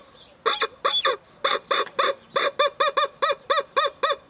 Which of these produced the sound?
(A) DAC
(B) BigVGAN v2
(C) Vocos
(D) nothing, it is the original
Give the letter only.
D